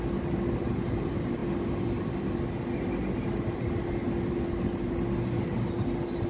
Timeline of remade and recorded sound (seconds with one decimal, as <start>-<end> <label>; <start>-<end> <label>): 0.0-6.3 recorded